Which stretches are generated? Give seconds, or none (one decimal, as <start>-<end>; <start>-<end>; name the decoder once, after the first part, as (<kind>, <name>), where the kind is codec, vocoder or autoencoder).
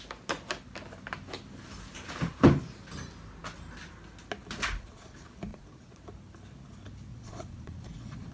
5.5-6.0 (vocoder, Vocos); 7.1-8.3